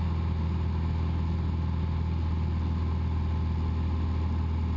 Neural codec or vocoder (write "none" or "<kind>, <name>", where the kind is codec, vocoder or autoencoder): none